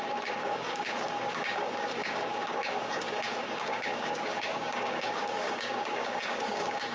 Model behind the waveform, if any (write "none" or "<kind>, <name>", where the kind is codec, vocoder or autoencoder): codec, DAC